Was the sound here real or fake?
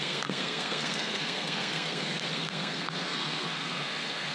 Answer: fake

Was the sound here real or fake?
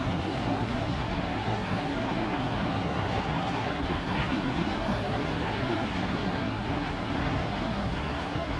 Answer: fake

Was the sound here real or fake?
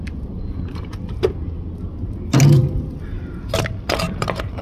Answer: real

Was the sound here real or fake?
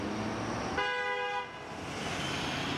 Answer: real